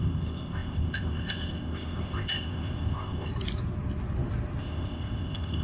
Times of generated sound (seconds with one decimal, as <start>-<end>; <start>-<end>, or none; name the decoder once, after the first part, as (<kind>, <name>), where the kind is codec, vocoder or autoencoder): 0.0-3.3 (codec, ZipCodec); 4.6-5.6